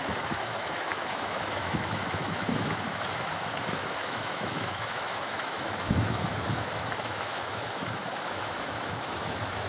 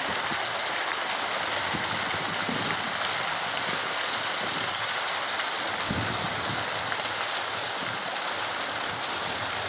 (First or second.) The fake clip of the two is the first